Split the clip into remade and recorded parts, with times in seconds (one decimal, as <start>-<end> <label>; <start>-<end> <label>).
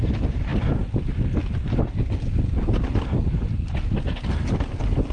0.0-5.1 recorded